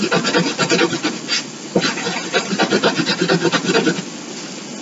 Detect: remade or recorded recorded